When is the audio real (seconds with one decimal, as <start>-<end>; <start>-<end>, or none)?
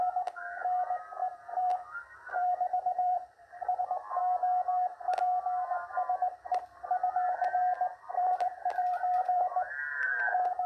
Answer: 0.0-1.2; 3.8-7.9; 10.2-10.7